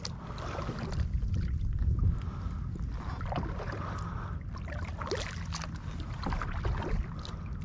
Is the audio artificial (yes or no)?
no